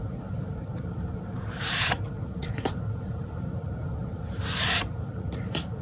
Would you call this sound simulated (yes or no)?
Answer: yes